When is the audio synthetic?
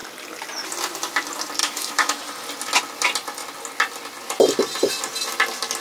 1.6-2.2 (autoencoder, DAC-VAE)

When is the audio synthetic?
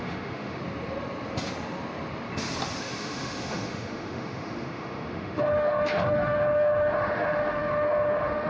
0.0-0.6 (autoencoder, DAC-VAE); 2.8-8.5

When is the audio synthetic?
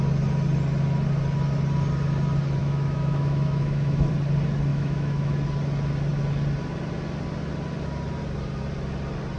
2.6-4.1 (autoencoder, DAC-VAE); 4.7-5.3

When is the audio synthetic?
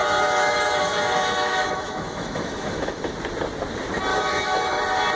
0.0-3.1 (autoencoder, DAC-VAE); 4.1-4.8